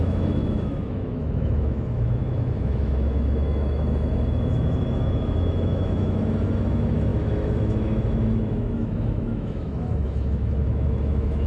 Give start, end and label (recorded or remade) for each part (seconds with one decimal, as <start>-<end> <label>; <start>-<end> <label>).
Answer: 0.0-11.5 remade